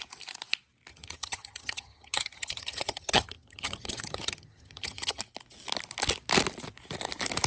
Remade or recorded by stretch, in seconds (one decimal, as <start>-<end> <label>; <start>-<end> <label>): 0.0-0.9 recorded; 0.9-5.2 remade; 5.2-7.5 recorded